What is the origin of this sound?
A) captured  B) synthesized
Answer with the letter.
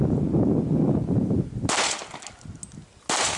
A